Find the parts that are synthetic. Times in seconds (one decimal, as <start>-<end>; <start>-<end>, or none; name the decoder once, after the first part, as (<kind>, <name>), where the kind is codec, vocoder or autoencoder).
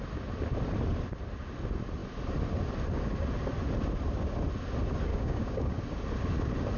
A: 5.1-5.8 (codec, DAC)